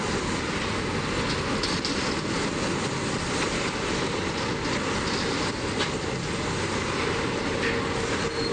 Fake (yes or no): no